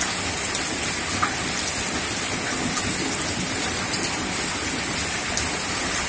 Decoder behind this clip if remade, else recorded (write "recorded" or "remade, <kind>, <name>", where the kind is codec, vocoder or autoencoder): recorded